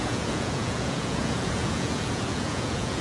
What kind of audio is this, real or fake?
fake